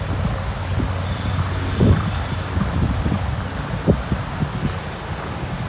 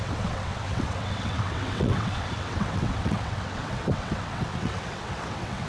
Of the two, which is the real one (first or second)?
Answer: first